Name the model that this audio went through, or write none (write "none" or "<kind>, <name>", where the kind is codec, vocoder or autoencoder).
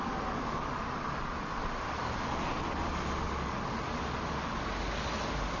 none